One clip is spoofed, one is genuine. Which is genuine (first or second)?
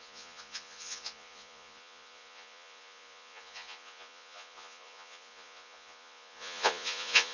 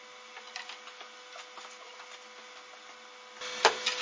second